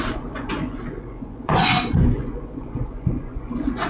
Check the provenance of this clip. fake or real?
fake